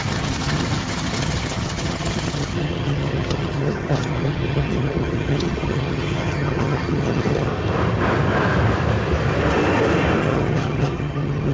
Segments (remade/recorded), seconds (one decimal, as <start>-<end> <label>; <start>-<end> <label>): 0.0-7.5 remade; 7.5-10.2 recorded; 10.2-11.5 remade